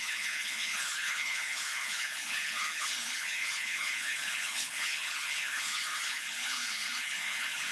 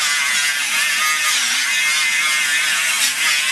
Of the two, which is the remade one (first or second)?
first